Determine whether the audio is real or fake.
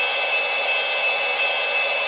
real